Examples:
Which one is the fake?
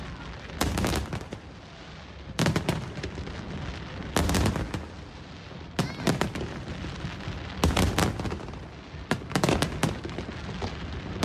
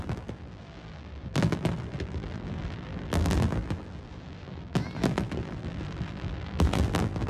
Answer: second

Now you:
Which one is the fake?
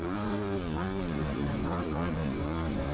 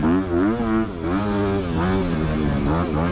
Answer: first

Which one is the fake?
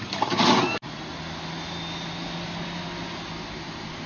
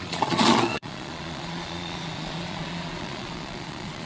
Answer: second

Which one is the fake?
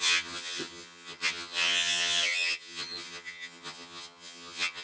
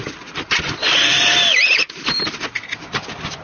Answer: first